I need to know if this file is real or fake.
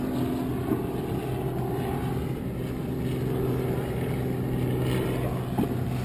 real